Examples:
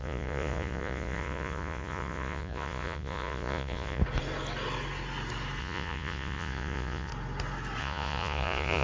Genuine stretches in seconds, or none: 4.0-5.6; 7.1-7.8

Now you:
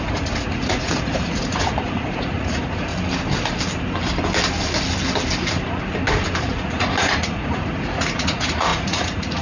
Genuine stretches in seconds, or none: 2.9-6.4

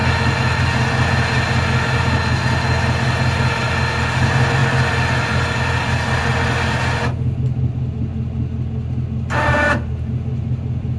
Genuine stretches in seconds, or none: 0.0-11.0

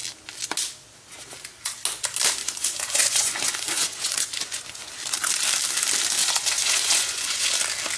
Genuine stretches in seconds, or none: 0.0-2.4; 4.9-6.2; 7.5-8.0